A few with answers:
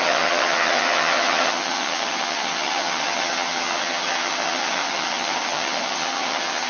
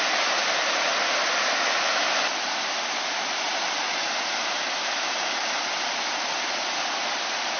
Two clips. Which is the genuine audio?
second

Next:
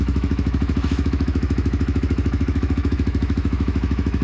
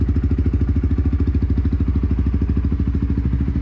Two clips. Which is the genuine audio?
second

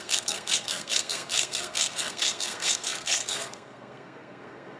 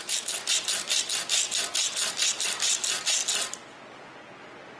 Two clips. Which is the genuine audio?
second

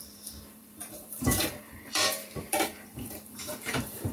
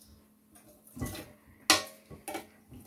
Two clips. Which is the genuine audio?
second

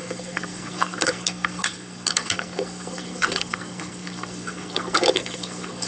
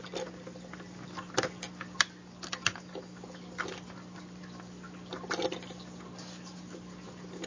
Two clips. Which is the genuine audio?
second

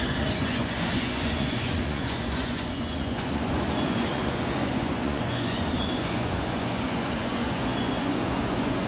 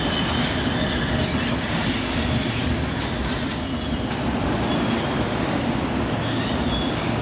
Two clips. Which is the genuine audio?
second